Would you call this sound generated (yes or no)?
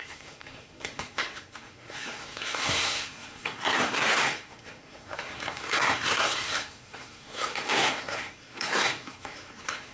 yes